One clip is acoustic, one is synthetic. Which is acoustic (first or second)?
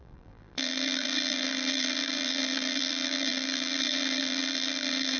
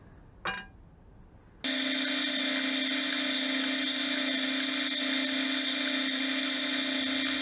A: second